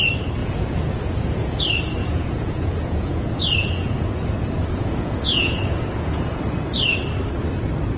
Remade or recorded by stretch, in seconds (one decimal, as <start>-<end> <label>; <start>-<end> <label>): 0.0-0.4 recorded; 0.4-1.6 remade; 1.6-2.0 recorded; 2.0-6.4 remade; 6.4-8.0 recorded